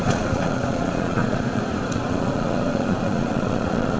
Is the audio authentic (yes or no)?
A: no